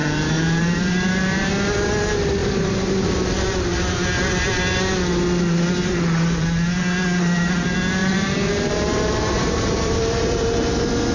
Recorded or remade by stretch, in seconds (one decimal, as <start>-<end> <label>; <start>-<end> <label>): 0.0-1.5 remade; 1.5-2.4 recorded; 2.4-3.1 remade; 3.1-8.0 recorded; 8.0-10.7 remade; 10.7-11.1 recorded